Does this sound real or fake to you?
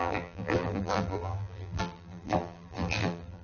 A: fake